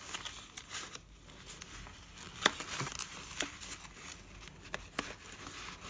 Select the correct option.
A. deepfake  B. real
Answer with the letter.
B